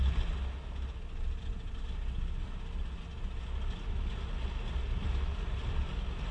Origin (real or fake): real